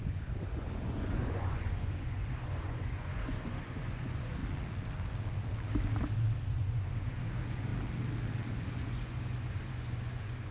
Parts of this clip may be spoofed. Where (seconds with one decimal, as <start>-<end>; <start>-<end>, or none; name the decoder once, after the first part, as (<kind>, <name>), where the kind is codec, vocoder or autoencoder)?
0.0-4.4 (vocoder, Vocos); 6.5-7.7; 8.5-10.5

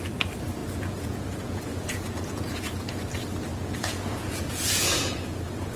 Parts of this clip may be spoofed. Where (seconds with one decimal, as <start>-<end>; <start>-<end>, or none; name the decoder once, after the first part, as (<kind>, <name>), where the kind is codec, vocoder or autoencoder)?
0.6-3.0 (vocoder, Vocos); 3.5-5.8

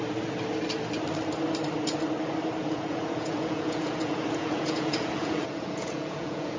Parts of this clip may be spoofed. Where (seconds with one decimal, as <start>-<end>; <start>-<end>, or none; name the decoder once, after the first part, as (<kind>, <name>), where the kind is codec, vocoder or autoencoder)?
2.6-6.6 (vocoder, Vocos)

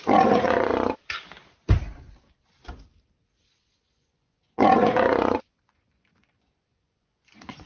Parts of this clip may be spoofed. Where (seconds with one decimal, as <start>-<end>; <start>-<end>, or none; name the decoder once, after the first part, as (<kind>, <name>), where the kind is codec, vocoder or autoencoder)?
0.0-0.7 (vocoder, Vocos); 3.6-7.7

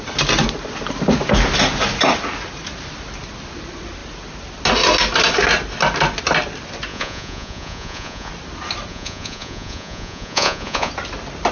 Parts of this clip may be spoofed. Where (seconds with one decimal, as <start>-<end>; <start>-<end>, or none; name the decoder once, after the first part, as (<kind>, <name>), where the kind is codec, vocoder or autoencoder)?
6.9-8.3 (vocoder, Vocos); 8.9-10.9

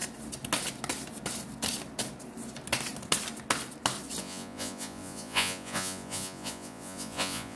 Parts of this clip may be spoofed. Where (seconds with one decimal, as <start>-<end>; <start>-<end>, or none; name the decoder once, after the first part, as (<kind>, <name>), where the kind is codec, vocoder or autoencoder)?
4.2-7.6 (vocoder, Vocos)

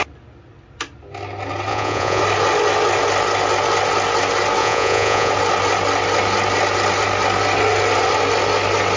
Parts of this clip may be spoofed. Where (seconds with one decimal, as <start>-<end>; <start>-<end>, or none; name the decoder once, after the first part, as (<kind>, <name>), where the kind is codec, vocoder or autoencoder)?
1.7-2.2 (vocoder, Vocos); 4.6-5.3